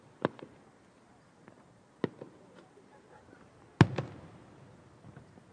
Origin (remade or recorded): recorded